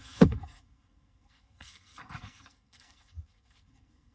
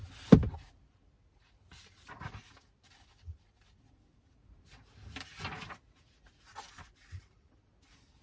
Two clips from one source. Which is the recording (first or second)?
second